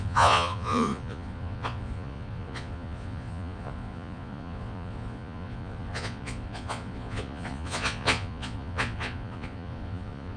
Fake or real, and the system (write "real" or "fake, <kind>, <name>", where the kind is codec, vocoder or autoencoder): fake, vocoder, Vocos